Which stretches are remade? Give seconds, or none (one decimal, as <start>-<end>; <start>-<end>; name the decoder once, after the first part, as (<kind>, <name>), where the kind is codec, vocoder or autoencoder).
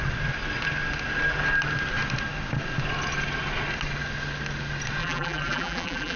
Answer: 5.0-6.2 (vocoder, BigVGAN v2)